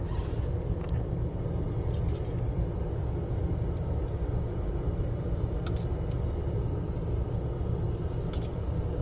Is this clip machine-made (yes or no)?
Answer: no